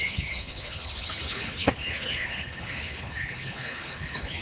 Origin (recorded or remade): remade